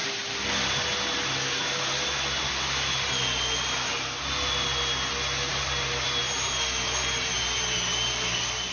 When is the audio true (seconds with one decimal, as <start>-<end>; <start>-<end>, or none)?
0.0-8.7